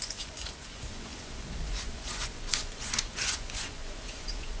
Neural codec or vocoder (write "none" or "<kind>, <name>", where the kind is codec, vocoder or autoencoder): vocoder, Vocos